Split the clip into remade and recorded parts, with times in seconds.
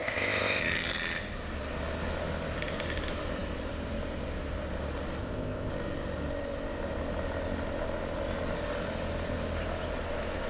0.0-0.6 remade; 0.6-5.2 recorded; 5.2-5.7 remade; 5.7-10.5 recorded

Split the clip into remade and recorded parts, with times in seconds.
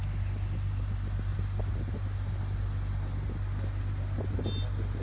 0.0-5.0 recorded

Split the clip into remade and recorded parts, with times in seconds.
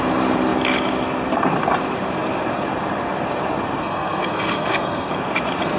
0.0-3.8 recorded; 3.8-5.1 remade; 5.1-5.8 recorded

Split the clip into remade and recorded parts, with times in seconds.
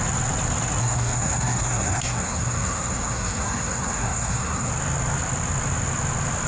0.0-0.8 recorded; 0.8-4.7 remade; 4.7-6.5 recorded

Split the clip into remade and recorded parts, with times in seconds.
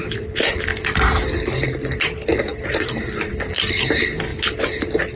0.0-2.5 recorded; 2.5-3.3 remade; 3.3-5.2 recorded